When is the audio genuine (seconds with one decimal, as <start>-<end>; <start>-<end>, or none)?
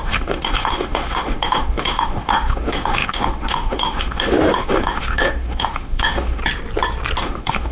6.4-7.2